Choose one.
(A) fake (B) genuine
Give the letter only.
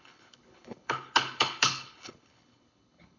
A